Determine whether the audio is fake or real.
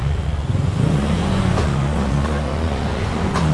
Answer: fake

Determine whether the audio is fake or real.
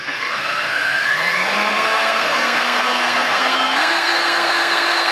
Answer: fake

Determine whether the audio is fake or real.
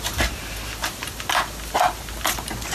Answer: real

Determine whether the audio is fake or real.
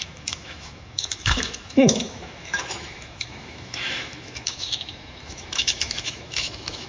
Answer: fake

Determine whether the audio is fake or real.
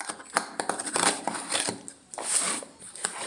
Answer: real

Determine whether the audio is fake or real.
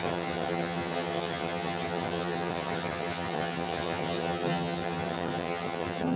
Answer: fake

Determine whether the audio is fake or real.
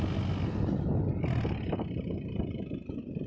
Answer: real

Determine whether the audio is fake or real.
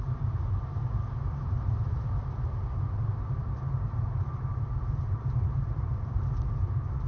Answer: fake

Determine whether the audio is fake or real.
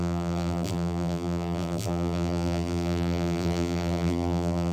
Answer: fake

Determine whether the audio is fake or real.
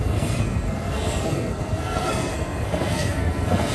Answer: fake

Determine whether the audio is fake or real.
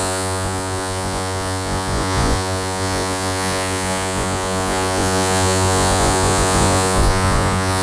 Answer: fake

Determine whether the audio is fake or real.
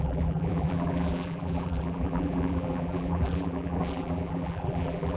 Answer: fake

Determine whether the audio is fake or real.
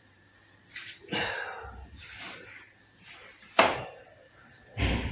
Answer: fake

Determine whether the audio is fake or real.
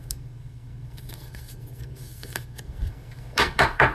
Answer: fake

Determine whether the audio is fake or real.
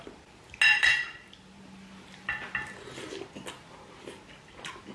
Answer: real